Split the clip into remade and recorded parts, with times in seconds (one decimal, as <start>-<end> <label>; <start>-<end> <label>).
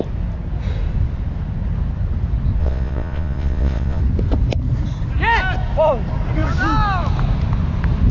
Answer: 0.0-2.6 recorded; 2.6-4.0 remade; 4.0-8.1 recorded